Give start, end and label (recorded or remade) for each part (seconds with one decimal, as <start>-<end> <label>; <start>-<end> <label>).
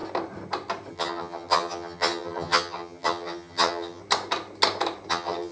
0.0-0.9 recorded; 0.9-4.0 remade; 4.0-5.1 recorded; 5.1-5.5 remade